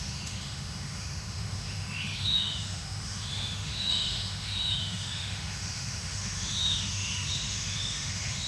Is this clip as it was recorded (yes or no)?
no